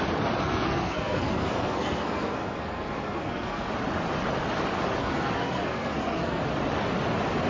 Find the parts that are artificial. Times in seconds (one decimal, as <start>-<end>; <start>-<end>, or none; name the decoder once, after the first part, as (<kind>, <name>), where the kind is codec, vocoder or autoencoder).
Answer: 0.4-3.7 (codec, SNAC); 5.0-6.4